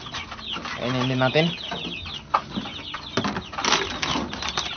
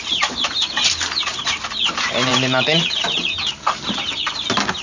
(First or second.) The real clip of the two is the first